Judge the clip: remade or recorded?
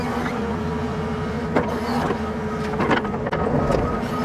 recorded